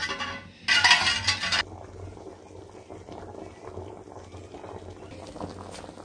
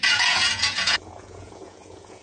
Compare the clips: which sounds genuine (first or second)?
first